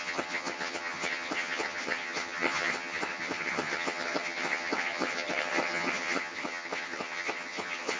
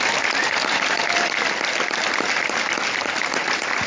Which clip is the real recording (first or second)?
second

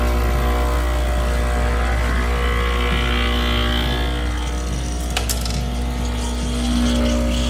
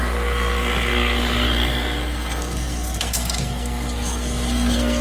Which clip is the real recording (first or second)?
first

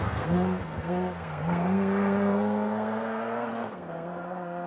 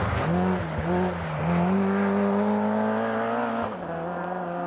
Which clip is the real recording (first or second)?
second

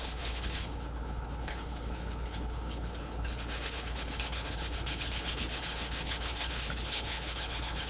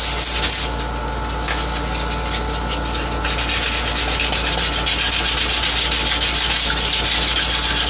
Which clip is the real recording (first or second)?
second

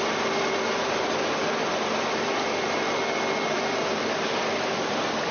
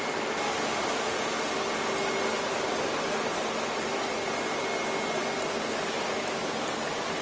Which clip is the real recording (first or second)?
second